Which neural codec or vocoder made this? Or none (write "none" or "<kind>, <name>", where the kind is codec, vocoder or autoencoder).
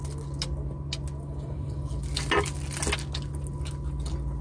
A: none